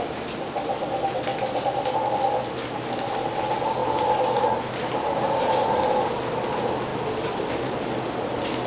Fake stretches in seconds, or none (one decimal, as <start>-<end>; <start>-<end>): none